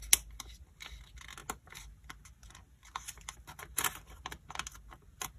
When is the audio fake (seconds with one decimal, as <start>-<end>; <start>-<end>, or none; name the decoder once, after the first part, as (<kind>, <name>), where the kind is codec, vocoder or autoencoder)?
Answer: none

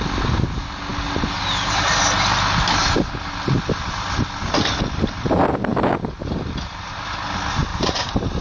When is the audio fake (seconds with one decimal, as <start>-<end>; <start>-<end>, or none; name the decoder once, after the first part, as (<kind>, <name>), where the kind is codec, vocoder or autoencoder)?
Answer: 7.7-8.4 (vocoder, BigVGAN v2)

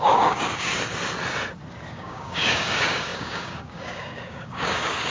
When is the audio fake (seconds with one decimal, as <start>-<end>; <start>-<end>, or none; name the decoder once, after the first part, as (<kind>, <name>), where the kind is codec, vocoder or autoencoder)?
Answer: 0.0-0.7 (codec, DAC); 1.9-5.1

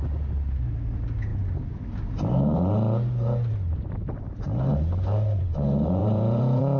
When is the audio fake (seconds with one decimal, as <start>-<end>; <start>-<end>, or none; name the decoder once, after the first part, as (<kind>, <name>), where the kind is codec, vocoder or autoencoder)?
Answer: 6.0-6.8 (vocoder, BigVGAN v2)